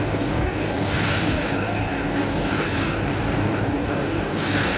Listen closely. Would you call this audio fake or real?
fake